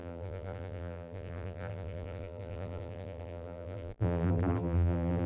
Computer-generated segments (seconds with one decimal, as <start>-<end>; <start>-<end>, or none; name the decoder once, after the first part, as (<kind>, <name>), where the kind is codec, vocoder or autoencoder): 0.0-5.3 (vocoder, BigVGAN v2)